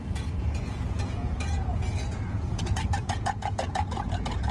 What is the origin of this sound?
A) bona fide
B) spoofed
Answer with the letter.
B